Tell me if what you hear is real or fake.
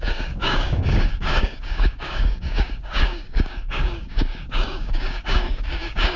fake